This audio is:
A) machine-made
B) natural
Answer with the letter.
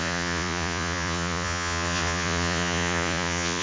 A